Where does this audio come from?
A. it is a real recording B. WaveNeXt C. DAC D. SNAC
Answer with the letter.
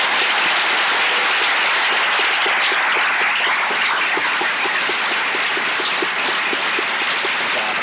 A